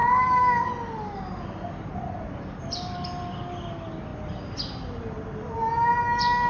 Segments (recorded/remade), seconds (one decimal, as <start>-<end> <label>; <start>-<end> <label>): 0.0-0.7 remade; 0.7-6.5 recorded